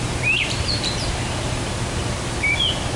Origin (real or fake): fake